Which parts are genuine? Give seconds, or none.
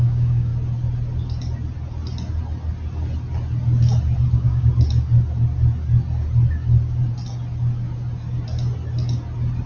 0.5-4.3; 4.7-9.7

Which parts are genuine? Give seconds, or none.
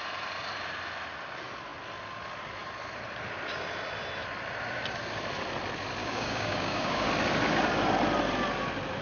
0.0-6.0; 7.1-9.0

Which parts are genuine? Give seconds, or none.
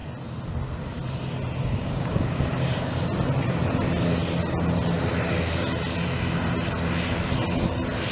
0.0-1.8; 2.9-8.1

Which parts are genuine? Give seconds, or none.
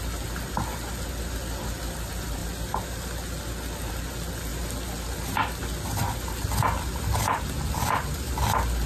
0.0-8.9